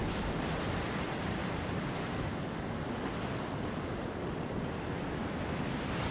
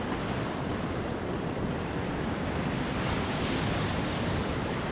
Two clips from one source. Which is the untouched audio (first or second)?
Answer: first